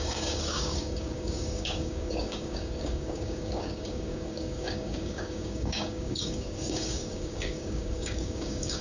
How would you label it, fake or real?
fake